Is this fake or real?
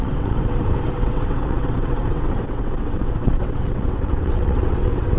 fake